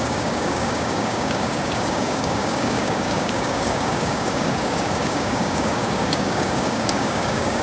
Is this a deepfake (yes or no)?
yes